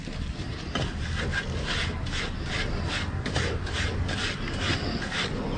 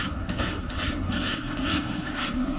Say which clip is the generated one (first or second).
second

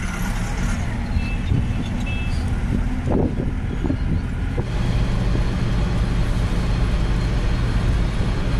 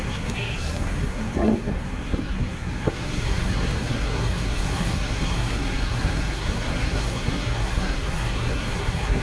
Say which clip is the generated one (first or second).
second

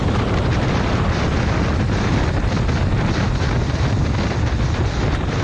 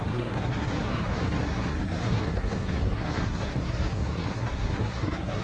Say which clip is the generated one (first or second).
second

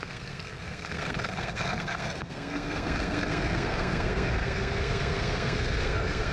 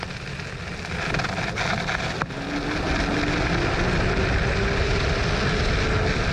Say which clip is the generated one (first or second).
first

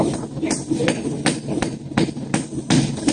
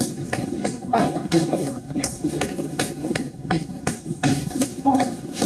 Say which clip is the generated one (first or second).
second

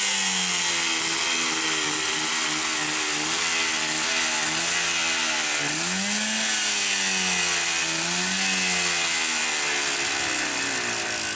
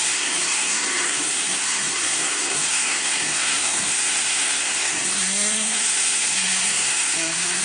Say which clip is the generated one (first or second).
second